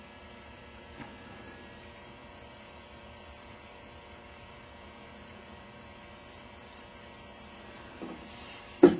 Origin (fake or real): fake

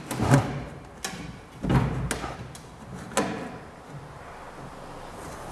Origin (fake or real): real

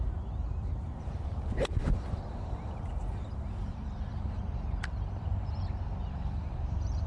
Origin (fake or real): fake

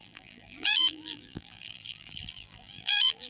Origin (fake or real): fake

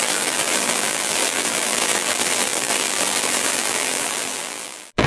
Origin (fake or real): fake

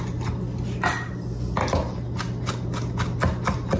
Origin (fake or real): real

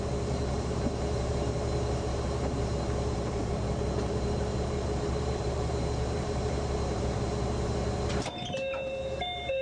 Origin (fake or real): fake